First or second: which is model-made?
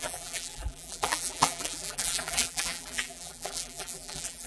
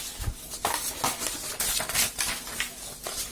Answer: first